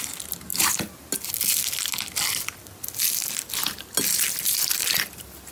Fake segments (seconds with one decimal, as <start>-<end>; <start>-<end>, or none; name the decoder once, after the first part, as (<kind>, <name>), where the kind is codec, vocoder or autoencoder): none